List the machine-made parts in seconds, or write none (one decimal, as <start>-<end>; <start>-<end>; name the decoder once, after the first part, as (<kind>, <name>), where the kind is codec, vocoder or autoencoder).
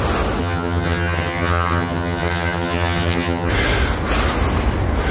0.4-3.5 (vocoder, HiFi-GAN)